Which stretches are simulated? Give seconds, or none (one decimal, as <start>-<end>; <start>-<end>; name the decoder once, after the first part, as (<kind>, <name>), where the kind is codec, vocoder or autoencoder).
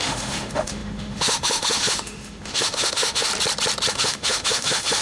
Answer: 0.0-3.3 (autoencoder, DAC-VAE); 3.9-5.0